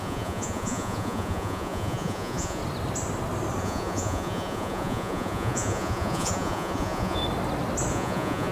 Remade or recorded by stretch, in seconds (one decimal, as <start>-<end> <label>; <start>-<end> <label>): 0.0-2.6 remade; 2.6-3.6 recorded; 3.6-7.2 remade; 7.2-7.9 recorded; 7.9-8.5 remade